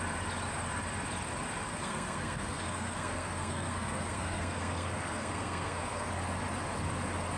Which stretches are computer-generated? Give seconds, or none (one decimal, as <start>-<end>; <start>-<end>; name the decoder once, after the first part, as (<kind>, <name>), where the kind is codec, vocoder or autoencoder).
1.7-6.1 (codec, SNAC)